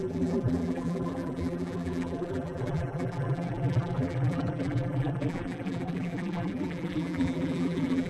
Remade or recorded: remade